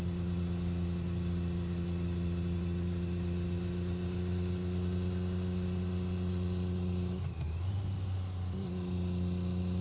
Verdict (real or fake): real